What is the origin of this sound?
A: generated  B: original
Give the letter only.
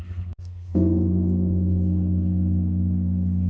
A